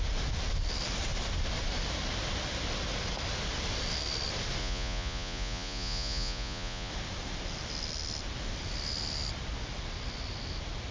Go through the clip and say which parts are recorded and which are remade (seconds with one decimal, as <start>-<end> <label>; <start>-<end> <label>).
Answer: 0.0-4.6 recorded; 4.6-6.9 remade; 6.9-10.9 recorded